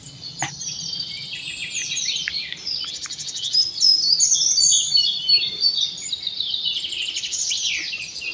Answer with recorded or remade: remade